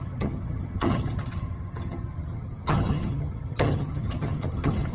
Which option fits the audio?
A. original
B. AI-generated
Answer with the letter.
B